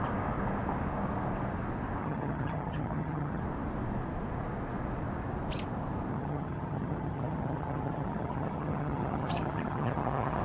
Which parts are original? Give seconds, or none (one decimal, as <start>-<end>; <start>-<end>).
0.0-2.0; 3.4-6.1